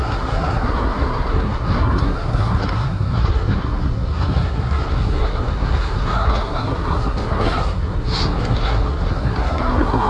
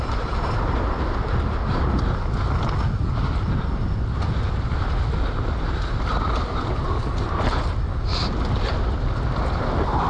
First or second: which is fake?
first